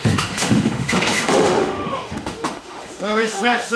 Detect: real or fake fake